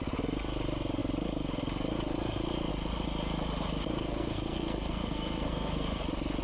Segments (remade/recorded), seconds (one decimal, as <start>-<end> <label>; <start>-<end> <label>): 0.0-4.0 recorded; 4.0-6.0 remade; 6.0-6.4 recorded

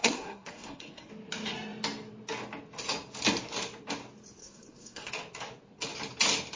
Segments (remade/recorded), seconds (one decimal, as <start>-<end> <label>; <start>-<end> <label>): 0.0-1.1 remade; 1.1-4.4 recorded; 4.4-5.1 remade; 5.1-6.6 recorded